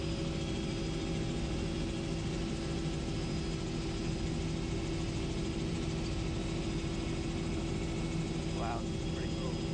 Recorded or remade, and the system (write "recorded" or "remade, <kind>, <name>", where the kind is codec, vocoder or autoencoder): recorded